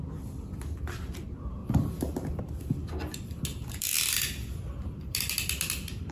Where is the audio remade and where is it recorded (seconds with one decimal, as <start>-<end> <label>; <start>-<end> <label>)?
0.0-1.6 recorded; 1.6-2.4 remade; 2.4-6.1 recorded